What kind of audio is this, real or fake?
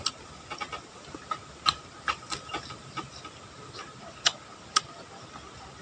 real